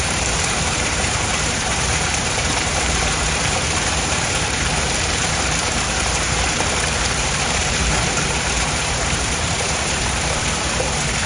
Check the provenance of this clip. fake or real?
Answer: fake